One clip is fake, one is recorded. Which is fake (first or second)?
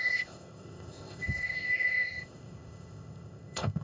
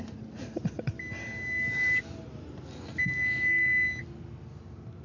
first